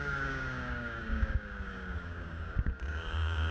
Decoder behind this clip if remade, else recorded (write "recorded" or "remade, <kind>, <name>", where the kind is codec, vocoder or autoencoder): remade, codec, DAC